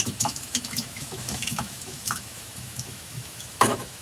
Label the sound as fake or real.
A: fake